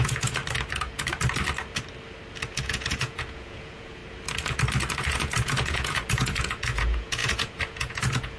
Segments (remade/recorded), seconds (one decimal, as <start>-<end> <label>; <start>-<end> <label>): 0.0-0.4 remade; 0.4-2.6 recorded; 2.6-4.0 remade; 4.0-5.0 recorded; 5.0-8.4 remade